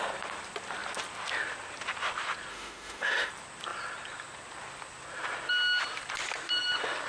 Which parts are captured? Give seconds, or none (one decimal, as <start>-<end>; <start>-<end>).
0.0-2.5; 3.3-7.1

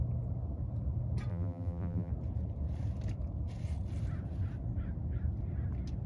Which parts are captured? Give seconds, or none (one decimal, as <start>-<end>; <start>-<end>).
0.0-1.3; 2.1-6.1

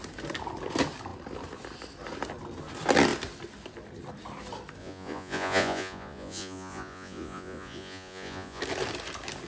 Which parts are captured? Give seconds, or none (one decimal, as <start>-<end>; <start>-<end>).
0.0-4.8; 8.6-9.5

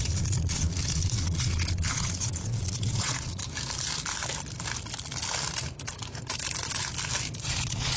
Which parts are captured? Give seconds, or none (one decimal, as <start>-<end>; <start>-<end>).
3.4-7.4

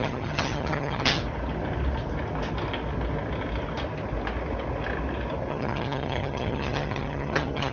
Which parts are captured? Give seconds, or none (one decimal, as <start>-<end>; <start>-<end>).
1.2-5.5

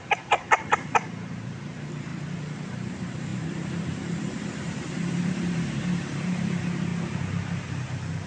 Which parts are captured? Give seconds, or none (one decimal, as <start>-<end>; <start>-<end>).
2.1-2.9; 6.9-7.7